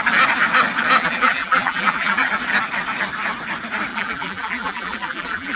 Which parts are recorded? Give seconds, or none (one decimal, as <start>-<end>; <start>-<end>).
0.0-1.0; 2.3-3.9